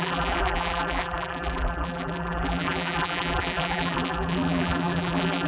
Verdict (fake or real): fake